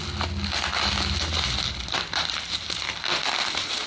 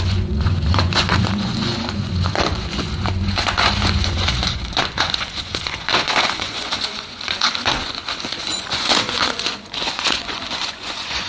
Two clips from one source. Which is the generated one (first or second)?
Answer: second